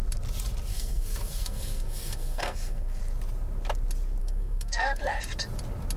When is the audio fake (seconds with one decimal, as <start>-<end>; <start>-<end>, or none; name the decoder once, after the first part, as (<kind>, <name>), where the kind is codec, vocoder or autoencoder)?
0.7-3.0 (codec, SNAC); 4.2-5.2